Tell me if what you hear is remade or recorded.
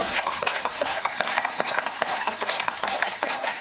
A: remade